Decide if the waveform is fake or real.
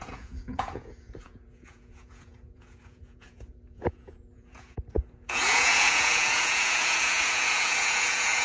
fake